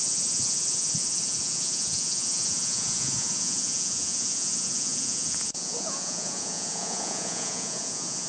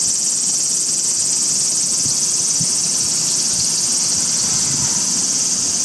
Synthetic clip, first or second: first